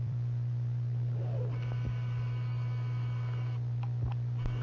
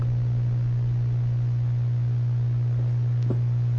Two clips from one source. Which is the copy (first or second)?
first